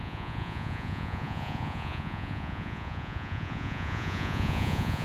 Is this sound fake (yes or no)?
yes